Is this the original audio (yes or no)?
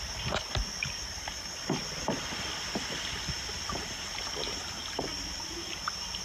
yes